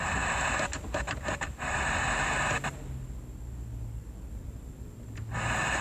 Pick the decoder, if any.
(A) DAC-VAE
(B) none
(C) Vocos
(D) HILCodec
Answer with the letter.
B